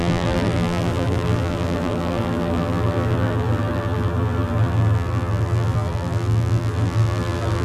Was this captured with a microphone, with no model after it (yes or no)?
no